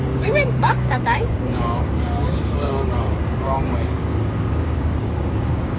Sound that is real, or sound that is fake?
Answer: fake